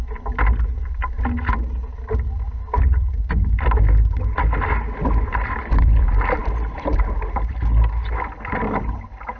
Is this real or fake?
real